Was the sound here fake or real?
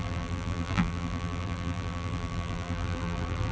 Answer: fake